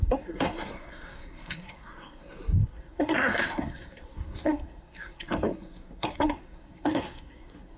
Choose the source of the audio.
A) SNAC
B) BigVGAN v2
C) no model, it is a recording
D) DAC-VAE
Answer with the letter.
A